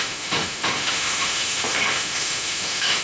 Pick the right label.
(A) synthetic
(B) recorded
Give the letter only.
A